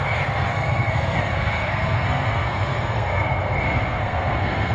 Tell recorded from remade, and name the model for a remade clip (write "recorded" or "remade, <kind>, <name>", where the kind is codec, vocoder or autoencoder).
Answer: remade, codec, SNAC